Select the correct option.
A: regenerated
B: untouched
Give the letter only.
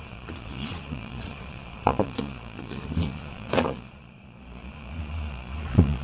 A